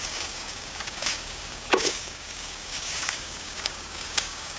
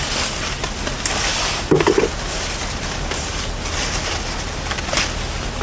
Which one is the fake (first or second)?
first